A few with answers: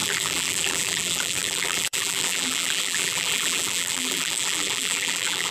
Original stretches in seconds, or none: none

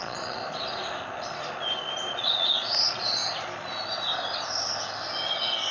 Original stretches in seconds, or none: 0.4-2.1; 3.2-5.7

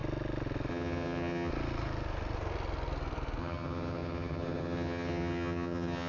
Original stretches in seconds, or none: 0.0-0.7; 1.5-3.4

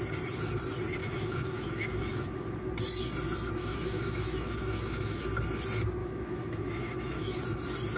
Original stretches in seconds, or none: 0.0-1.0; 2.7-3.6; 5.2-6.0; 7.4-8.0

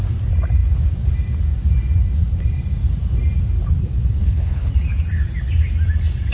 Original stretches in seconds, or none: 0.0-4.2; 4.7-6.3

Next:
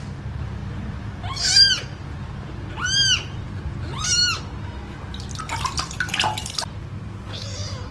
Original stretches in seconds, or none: 0.0-7.9